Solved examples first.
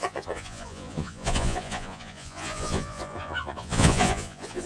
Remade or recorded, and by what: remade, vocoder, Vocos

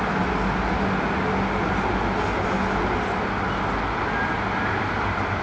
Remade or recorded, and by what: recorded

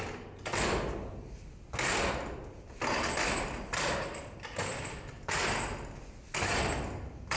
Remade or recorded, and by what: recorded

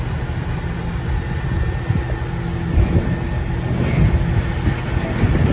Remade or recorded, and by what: recorded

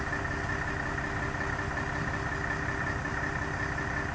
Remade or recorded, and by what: recorded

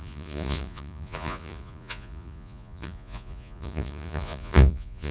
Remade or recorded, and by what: remade, vocoder, Vocos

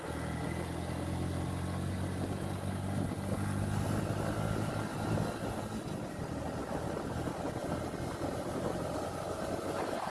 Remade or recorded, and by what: recorded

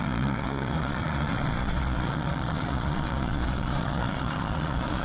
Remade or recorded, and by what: remade, vocoder, Vocos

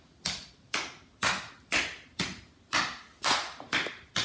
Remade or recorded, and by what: recorded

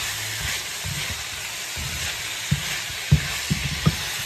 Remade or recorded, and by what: recorded